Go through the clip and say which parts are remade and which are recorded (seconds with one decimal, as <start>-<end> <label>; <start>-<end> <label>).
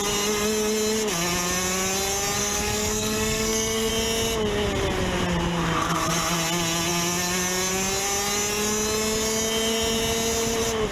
0.0-2.4 recorded; 2.4-3.9 remade; 3.9-10.9 recorded